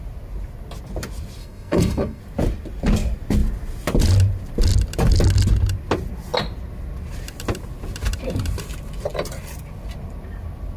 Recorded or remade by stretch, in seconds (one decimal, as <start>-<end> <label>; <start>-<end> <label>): 0.0-1.4 recorded; 1.4-2.2 remade; 2.2-10.8 recorded